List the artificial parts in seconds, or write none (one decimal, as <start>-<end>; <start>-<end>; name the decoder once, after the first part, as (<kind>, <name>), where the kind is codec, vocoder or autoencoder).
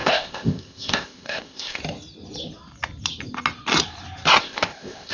0.0-1.8 (codec, ZipCodec); 4.4-5.1